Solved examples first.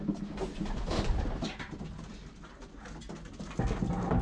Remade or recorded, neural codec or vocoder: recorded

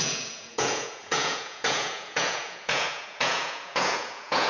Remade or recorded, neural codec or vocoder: remade, vocoder, Vocos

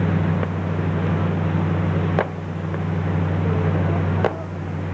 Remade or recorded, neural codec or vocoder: recorded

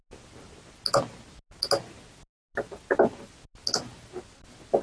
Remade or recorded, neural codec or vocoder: recorded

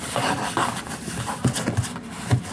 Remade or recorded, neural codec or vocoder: recorded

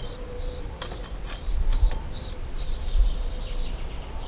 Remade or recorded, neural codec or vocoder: remade, vocoder, BigVGAN v2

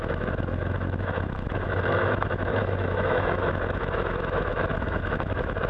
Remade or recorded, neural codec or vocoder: remade, autoencoder, DAC-VAE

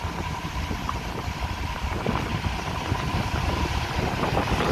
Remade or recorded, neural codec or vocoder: remade, vocoder, BigVGAN v2